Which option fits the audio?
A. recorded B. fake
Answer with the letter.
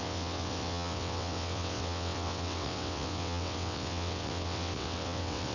B